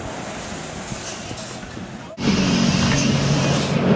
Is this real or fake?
real